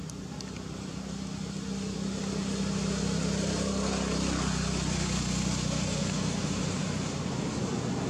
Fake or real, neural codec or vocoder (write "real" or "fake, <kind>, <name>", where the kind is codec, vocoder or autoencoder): real